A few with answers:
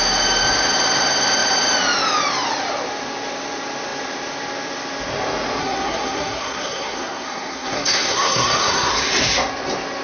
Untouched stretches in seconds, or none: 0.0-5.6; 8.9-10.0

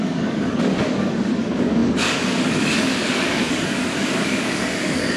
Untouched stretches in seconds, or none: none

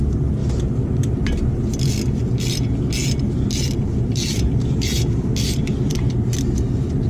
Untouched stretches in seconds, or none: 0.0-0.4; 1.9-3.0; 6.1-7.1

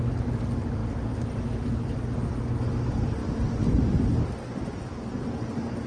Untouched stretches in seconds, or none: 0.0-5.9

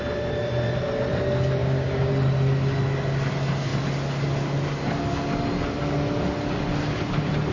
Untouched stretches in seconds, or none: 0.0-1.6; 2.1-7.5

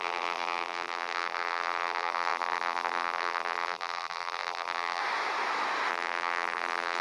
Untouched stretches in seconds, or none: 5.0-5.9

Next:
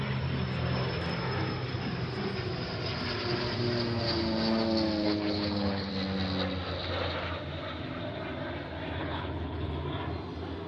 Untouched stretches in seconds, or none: 0.0-5.0; 5.9-9.0; 9.7-10.7